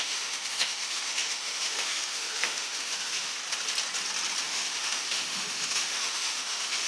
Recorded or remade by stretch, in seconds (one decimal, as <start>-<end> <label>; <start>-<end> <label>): 0.0-3.4 remade; 3.4-4.4 recorded; 4.4-6.9 remade